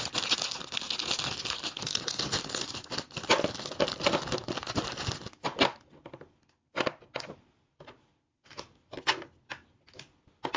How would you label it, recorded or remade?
recorded